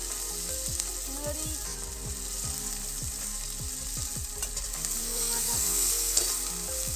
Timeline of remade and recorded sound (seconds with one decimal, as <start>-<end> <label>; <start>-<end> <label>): 0.0-5.0 recorded; 5.0-6.2 remade; 6.2-7.0 recorded